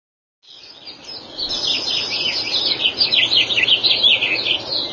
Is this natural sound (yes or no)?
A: yes